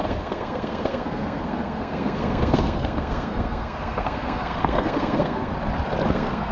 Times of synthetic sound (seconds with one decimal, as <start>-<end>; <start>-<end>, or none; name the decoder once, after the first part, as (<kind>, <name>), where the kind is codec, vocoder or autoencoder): 0.0-5.5 (codec, SNAC); 6.1-6.5